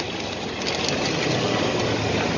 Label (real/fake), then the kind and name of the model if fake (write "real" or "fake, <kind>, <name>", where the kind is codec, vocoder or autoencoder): real